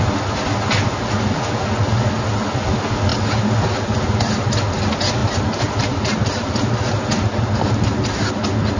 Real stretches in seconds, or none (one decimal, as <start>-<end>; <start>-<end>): 0.0-5.2; 8.3-8.8